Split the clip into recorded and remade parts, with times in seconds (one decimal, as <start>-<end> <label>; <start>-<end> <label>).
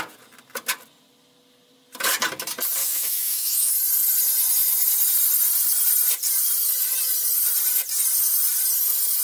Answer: 0.0-2.8 recorded; 2.8-3.7 remade; 3.7-9.2 recorded